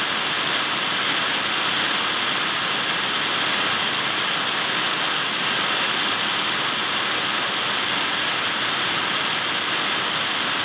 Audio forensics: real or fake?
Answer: real